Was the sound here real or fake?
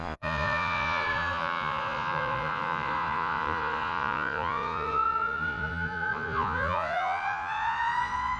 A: fake